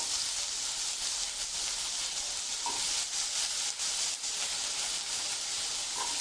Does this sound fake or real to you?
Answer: real